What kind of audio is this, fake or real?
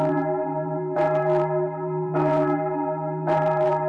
fake